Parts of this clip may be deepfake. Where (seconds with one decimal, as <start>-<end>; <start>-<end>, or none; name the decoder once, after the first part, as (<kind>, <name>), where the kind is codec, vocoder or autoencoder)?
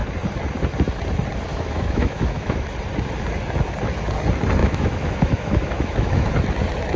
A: 1.5-2.7 (autoencoder, DAC-VAE); 4.6-6.3